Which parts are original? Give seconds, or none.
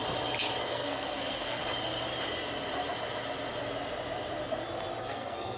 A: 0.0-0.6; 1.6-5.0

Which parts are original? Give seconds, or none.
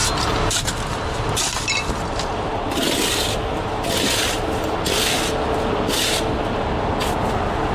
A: 0.0-7.7